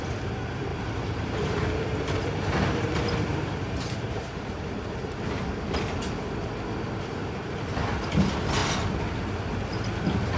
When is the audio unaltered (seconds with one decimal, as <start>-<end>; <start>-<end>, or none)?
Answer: 0.0-0.7; 5.8-7.2; 7.7-10.4